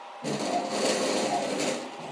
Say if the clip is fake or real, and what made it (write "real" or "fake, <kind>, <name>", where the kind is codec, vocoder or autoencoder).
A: real